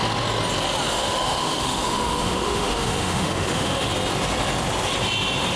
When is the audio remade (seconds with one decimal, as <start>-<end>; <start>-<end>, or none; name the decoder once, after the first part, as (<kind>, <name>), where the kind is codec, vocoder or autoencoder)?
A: 0.9-3.9 (autoencoder, DAC-VAE)